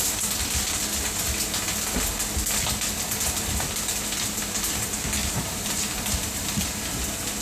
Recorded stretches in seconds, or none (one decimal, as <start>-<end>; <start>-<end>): 0.0-5.2; 6.6-7.4